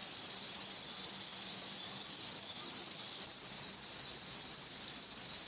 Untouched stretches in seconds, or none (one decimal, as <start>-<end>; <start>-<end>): 0.0-5.5